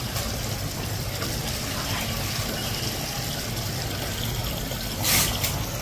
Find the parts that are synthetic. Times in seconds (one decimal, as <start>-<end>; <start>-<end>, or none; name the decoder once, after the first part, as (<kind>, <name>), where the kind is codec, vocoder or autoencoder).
none